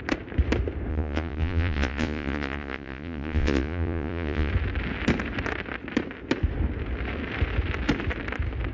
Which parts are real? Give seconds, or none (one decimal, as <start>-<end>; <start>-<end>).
0.0-0.9; 4.5-8.7